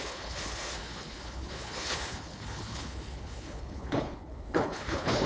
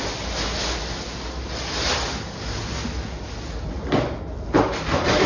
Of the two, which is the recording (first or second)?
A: second